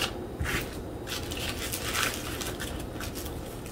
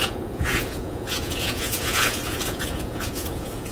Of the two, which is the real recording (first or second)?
first